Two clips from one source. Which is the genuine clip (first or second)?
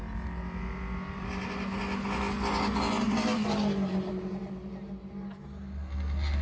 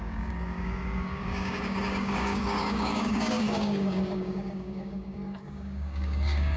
first